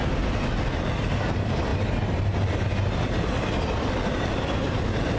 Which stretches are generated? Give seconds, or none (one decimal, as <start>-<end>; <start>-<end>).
none